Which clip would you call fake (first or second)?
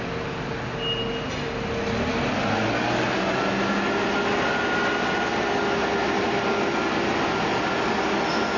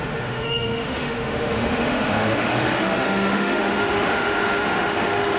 second